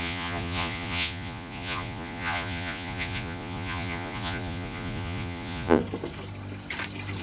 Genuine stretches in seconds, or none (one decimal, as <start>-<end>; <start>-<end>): 5.8-7.2